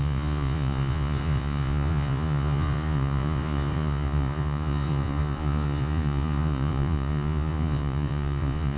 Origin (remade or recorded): remade